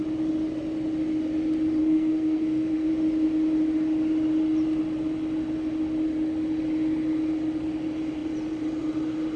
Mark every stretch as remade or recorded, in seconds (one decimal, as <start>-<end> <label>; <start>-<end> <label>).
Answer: 0.0-1.8 recorded; 1.8-2.9 remade; 2.9-9.4 recorded